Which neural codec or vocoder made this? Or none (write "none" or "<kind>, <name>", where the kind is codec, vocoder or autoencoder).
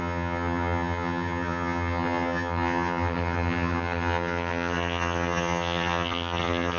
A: vocoder, HiFi-GAN